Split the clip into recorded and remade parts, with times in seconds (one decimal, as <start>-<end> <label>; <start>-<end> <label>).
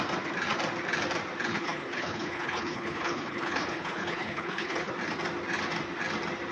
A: 0.0-1.5 recorded; 1.5-4.9 remade; 4.9-6.5 recorded